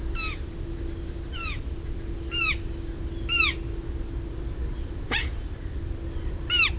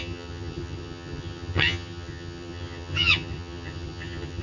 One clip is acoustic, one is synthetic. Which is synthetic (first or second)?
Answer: second